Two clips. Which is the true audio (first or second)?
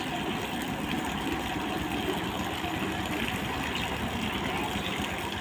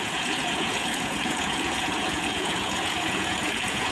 first